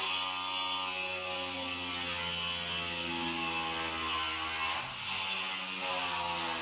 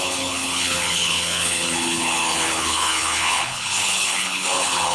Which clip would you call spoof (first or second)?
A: second